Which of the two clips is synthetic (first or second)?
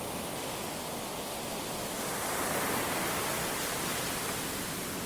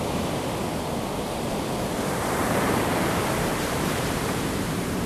second